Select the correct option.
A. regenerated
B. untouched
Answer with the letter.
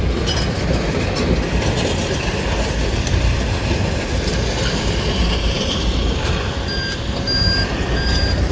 A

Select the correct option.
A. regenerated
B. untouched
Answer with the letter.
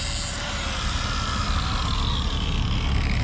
B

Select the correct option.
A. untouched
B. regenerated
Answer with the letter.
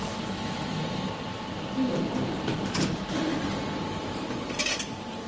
B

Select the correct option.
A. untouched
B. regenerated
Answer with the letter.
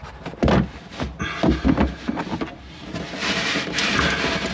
A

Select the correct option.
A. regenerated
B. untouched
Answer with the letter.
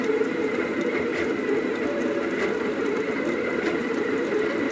A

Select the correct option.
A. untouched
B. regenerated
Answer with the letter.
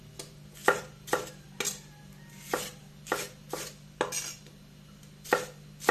A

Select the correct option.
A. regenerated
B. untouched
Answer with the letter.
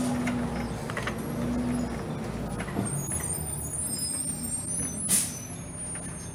B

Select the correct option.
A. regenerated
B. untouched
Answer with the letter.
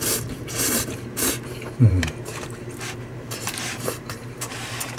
A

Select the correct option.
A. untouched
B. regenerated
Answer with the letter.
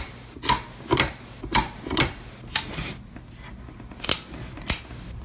A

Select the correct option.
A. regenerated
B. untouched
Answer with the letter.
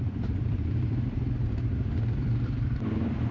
A